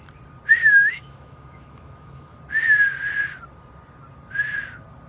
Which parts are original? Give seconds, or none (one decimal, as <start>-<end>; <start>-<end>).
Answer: 0.0-0.5; 2.4-5.1